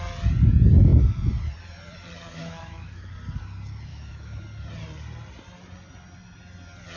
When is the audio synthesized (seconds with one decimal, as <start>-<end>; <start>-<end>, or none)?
2.4-3.1; 3.9-4.4